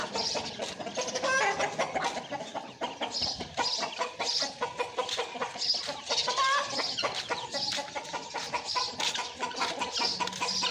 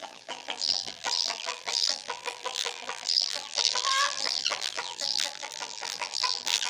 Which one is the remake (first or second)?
second